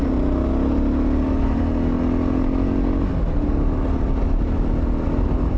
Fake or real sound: real